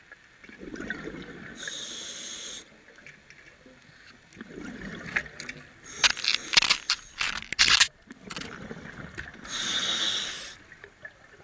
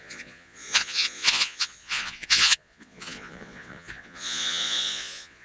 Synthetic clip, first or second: second